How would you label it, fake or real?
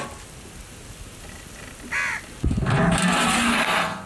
real